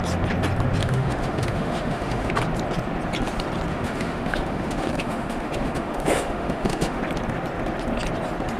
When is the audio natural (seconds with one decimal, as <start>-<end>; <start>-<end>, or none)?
0.0-0.8; 2.3-3.7; 7.0-8.6